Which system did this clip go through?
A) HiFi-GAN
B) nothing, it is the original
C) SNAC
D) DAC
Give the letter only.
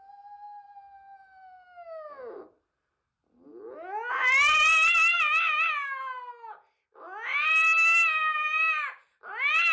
B